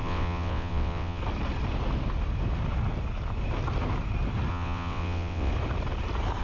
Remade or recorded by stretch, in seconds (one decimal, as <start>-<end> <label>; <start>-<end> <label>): 0.0-1.2 remade; 1.2-4.5 recorded; 4.5-5.5 remade; 5.5-6.4 recorded

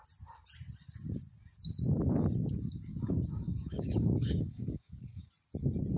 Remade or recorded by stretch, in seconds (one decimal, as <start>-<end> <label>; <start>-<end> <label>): 0.0-2.9 recorded; 2.9-5.3 remade; 5.3-6.0 recorded

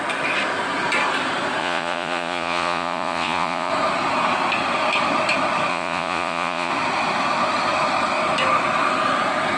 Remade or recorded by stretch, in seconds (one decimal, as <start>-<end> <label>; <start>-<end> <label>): 0.0-1.6 recorded; 1.6-3.7 remade; 3.7-5.7 recorded; 5.7-6.7 remade; 6.7-9.6 recorded

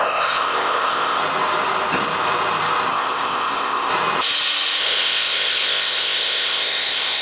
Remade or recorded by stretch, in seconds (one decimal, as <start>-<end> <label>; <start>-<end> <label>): 0.0-1.2 remade; 1.2-2.9 recorded; 2.9-3.9 remade; 3.9-4.8 recorded; 4.8-7.2 remade

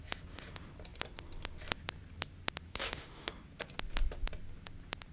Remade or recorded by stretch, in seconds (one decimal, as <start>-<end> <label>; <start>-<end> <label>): 0.0-2.7 recorded; 2.7-3.3 remade; 3.3-5.1 recorded